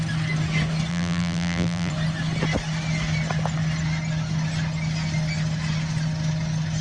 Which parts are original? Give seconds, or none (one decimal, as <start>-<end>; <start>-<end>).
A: 0.0-0.9; 1.9-6.8